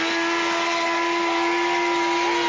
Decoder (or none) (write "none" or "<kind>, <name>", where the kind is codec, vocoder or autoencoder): none